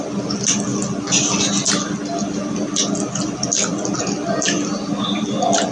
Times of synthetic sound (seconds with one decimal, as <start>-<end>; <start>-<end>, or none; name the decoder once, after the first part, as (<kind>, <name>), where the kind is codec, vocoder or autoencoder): none